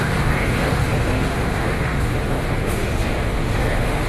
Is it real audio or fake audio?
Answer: fake